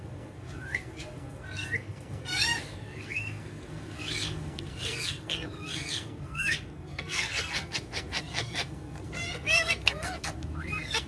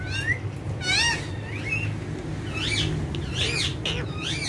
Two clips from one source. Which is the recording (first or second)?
second